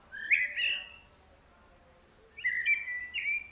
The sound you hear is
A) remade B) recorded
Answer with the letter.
B